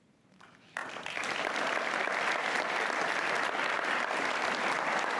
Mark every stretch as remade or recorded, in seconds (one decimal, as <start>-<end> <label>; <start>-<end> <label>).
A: 0.0-5.2 recorded